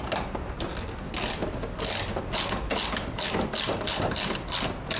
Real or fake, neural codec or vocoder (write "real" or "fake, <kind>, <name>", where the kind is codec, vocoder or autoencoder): real